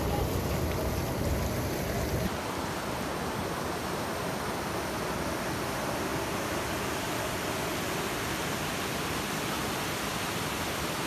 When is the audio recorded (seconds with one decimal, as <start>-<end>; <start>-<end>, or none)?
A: 0.0-11.1